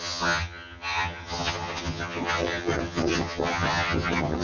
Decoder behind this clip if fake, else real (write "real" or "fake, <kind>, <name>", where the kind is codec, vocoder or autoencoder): fake, vocoder, HiFi-GAN